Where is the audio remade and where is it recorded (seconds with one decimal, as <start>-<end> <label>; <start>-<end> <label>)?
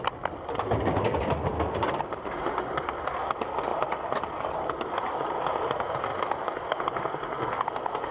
0.0-6.1 remade; 6.1-8.1 recorded